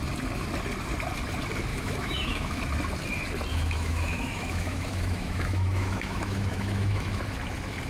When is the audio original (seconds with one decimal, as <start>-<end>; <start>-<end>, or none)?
0.0-1.7; 2.6-3.5; 7.2-7.9